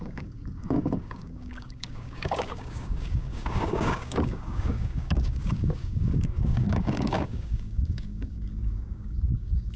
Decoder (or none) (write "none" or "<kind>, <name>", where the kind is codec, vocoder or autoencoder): codec, DAC